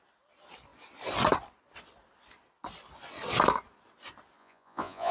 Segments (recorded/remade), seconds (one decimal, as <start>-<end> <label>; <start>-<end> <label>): 0.0-4.4 recorded; 4.4-5.1 remade